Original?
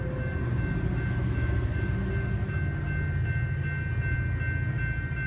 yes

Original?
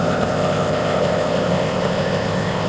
no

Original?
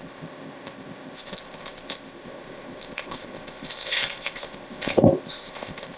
no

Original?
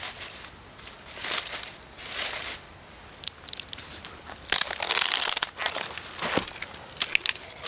yes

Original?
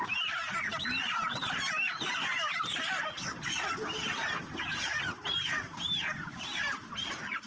yes